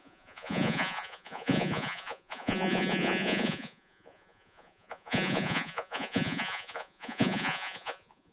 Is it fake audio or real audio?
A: fake